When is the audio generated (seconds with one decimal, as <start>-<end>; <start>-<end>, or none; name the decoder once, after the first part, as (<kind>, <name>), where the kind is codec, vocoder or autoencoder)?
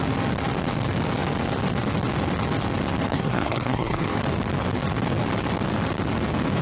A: 3.1-4.2 (codec, SNAC)